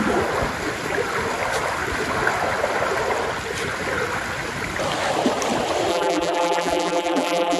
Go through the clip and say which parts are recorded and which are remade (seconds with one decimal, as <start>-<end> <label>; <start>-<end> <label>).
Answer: 0.0-5.9 recorded; 5.9-7.6 remade